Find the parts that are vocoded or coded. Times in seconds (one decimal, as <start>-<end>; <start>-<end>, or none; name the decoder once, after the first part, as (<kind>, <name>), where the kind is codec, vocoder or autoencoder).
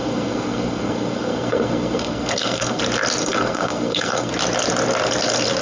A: 0.0-2.8 (codec, SNAC); 3.2-4.3